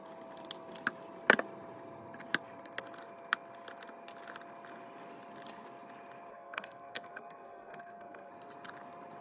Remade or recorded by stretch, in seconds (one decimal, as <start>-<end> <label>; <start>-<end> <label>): 0.0-6.3 recorded; 6.3-8.3 remade; 8.3-9.2 recorded